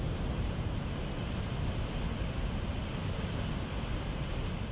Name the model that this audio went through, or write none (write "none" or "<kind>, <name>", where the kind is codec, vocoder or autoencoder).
none